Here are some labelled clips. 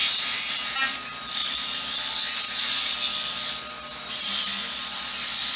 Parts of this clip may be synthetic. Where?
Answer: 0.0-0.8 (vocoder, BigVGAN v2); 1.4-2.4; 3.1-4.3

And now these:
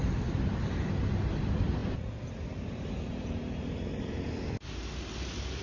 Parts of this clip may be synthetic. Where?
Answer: 0.0-1.0 (vocoder, BigVGAN v2); 1.8-4.5

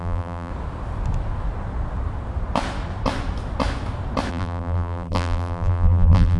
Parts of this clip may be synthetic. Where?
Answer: 0.0-0.5 (vocoder, BigVGAN v2); 4.3-6.4

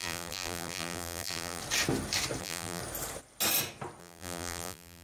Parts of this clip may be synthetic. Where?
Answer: 0.0-1.6 (vocoder, BigVGAN v2); 2.4-2.8; 4.0-5.0